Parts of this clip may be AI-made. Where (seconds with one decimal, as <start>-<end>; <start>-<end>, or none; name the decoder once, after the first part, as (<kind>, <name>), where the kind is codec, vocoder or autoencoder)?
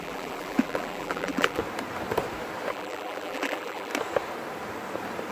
0.0-1.6 (vocoder, BigVGAN v2); 2.7-3.9